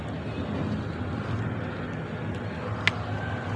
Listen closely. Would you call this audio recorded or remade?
recorded